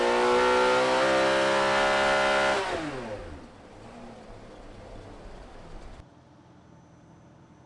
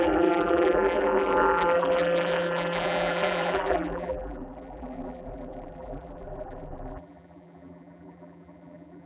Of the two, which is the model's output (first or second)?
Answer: second